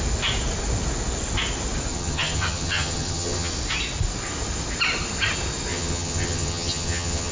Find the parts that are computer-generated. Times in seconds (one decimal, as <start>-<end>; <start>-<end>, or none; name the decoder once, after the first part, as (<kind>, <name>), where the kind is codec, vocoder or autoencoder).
1.9-3.5 (vocoder, HiFi-GAN); 5.7-7.3